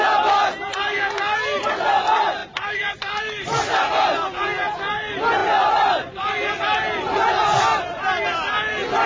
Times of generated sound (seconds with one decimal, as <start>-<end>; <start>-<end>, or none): 2.4-3.9; 5.4-6.6